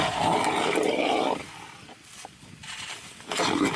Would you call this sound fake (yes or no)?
no